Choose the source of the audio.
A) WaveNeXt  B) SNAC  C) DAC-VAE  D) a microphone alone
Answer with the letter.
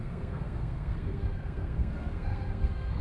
B